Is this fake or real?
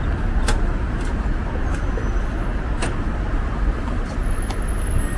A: real